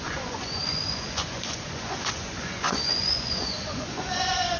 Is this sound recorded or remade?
remade